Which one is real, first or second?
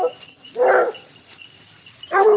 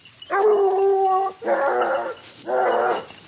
second